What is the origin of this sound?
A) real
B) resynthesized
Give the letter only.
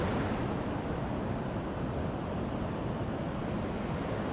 A